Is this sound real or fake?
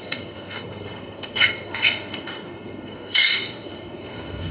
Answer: fake